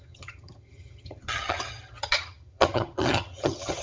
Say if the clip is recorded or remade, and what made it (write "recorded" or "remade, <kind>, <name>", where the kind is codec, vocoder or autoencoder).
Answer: remade, vocoder, HiFi-GAN